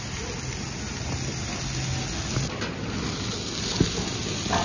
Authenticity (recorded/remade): recorded